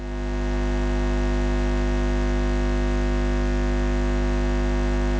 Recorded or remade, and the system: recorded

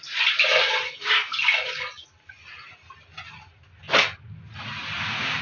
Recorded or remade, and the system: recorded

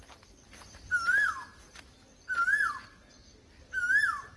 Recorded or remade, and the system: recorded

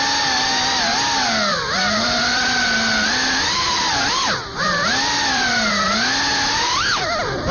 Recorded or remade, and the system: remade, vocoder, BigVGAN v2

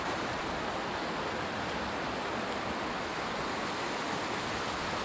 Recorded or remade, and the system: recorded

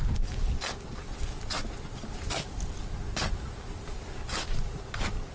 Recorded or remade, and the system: recorded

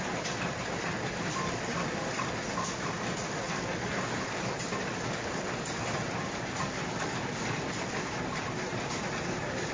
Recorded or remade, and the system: remade, vocoder, BigVGAN v2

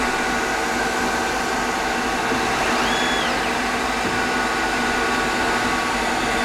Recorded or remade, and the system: recorded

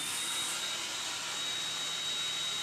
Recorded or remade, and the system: recorded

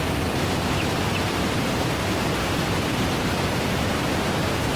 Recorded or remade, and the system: remade, vocoder, BigVGAN v2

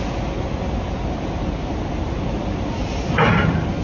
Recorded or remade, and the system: recorded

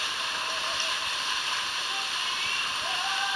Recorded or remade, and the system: recorded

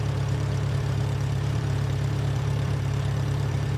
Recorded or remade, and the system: remade, vocoder, BigVGAN v2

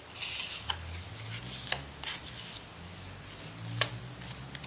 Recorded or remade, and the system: recorded